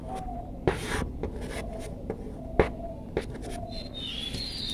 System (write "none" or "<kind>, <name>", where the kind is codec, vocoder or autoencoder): none